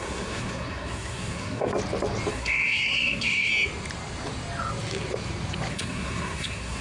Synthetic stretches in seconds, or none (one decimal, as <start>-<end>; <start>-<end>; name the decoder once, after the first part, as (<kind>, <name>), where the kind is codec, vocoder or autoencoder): 0.0-1.7 (codec, SNAC); 2.3-3.5; 5.7-6.8

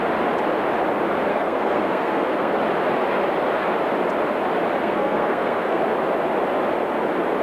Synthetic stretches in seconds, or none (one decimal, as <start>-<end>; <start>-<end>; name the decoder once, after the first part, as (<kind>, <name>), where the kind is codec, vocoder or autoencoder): 1.3-2.6 (codec, SNAC); 4.8-5.8